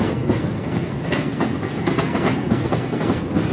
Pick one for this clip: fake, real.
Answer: fake